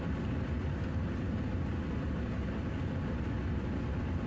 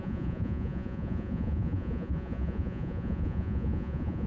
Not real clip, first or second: second